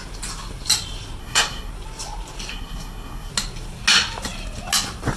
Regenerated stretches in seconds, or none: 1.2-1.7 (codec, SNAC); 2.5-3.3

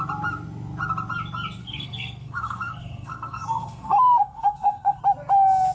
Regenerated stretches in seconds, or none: 1.6-5.0 (codec, SNAC)

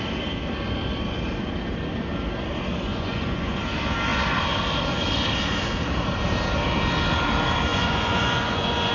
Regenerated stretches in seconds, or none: 2.9-3.6 (vocoder, Vocos); 7.7-8.9

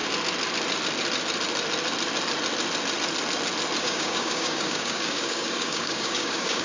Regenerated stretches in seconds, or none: 3.8-6.6 (codec, DAC)

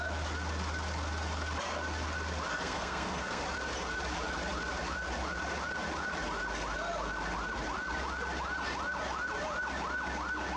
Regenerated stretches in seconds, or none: 2.5-3.4 (codec, SNAC)